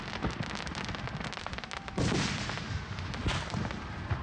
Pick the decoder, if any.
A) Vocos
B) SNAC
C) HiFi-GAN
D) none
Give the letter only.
D